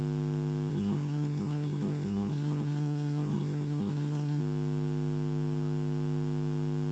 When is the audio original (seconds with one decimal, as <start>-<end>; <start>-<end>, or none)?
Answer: 0.0-0.7; 4.4-6.9